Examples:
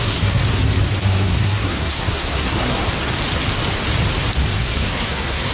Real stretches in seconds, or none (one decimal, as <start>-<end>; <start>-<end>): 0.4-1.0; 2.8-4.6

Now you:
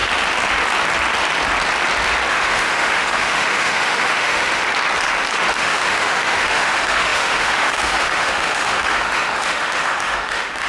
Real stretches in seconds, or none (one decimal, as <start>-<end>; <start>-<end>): 0.0-2.3; 4.6-5.6

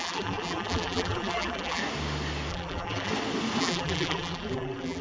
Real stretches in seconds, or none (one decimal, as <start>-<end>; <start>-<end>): 1.8-2.5; 3.1-3.6

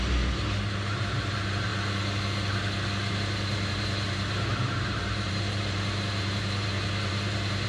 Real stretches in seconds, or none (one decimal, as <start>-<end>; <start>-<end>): 1.7-3.1

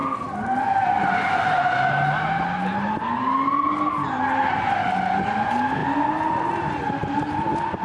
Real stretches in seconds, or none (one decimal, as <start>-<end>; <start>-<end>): 0.0-7.8

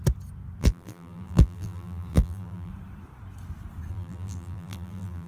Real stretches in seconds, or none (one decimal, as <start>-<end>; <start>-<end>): 0.0-0.6; 2.7-3.9

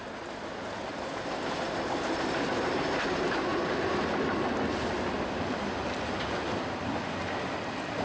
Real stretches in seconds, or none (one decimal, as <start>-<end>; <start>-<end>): 0.0-8.0